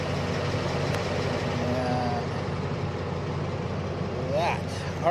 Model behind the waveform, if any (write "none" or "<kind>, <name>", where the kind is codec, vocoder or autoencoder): none